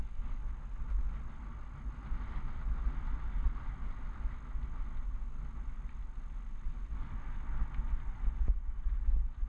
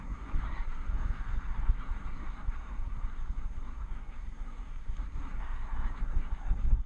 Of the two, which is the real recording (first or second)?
first